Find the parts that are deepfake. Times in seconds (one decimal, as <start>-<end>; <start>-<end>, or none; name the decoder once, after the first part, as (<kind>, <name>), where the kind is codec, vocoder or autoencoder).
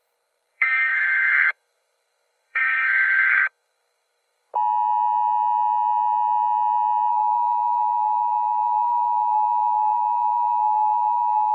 0.0-4.5 (codec, SNAC); 7.1-11.5